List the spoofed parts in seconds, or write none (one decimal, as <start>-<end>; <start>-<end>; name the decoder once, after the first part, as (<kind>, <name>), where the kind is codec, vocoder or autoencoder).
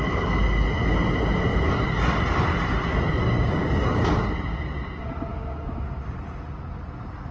3.2-4.1 (codec, DAC); 5.3-5.8